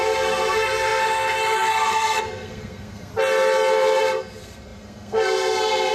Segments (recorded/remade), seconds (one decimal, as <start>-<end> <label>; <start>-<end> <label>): 0.0-3.1 remade; 3.1-4.0 recorded; 4.0-5.9 remade